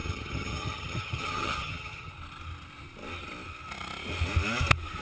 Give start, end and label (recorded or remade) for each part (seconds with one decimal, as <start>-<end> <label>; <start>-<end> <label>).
0.0-2.1 remade; 2.1-5.0 recorded